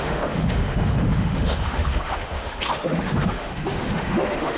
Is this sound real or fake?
fake